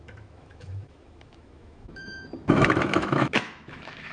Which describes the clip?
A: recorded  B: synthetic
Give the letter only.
B